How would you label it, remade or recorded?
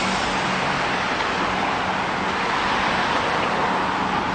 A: recorded